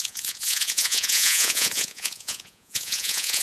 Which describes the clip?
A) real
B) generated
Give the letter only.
B